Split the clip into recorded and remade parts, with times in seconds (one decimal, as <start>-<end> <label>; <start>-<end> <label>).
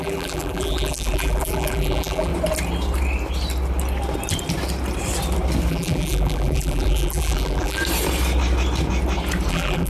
0.0-2.3 remade; 2.3-5.7 recorded; 5.7-7.8 remade; 7.8-9.5 recorded; 9.5-9.9 remade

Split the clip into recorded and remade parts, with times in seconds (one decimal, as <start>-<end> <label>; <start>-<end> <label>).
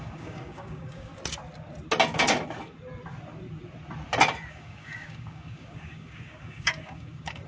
0.0-1.1 remade; 1.1-4.5 recorded; 4.5-7.5 remade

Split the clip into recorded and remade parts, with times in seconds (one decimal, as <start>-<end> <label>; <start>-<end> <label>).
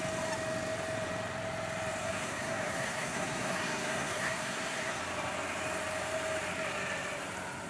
0.0-2.0 recorded; 2.0-5.0 remade; 5.0-7.7 recorded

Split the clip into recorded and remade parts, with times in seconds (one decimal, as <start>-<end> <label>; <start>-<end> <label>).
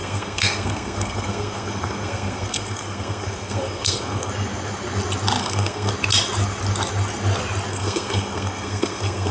0.0-4.3 remade; 4.3-5.4 recorded; 5.4-5.9 remade; 5.9-7.7 recorded; 7.7-9.3 remade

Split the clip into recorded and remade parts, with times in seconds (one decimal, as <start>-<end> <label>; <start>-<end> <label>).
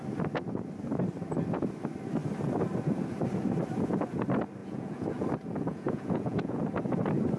0.0-4.6 recorded; 4.6-5.2 remade; 5.2-5.7 recorded; 5.7-6.6 remade; 6.6-7.4 recorded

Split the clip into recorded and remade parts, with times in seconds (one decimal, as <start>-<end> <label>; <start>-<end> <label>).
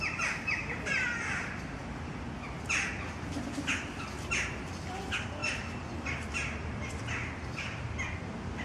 0.0-8.6 recorded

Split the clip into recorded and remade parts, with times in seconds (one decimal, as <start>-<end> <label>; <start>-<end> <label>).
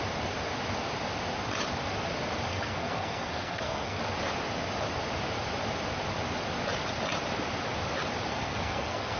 0.0-2.5 recorded; 2.5-4.0 remade; 4.0-8.3 recorded; 8.3-9.2 remade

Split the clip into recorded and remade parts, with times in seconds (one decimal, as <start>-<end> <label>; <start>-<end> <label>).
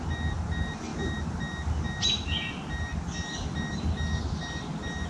0.0-5.1 recorded